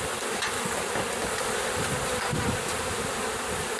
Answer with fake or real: real